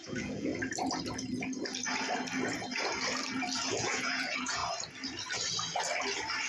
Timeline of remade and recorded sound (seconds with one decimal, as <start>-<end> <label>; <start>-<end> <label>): 0.0-0.5 remade; 0.5-3.7 recorded; 3.7-4.6 remade; 4.6-6.5 recorded